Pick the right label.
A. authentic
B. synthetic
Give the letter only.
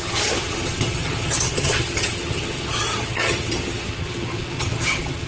B